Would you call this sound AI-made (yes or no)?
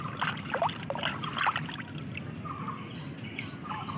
no